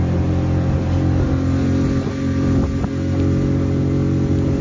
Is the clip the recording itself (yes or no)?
yes